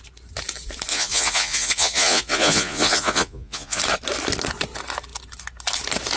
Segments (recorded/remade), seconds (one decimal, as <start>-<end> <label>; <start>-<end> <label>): 0.0-0.9 recorded; 0.9-3.8 remade; 3.8-6.2 recorded